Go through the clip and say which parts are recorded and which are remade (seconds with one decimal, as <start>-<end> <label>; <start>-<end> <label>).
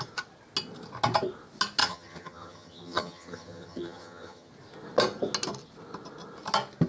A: 0.0-1.8 recorded; 1.8-4.5 remade; 4.5-6.9 recorded